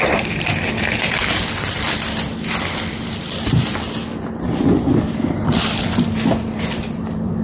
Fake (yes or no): yes